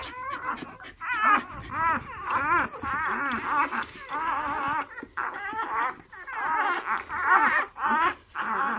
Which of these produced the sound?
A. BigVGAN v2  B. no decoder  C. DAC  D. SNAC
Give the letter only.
B